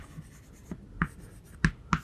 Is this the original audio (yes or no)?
yes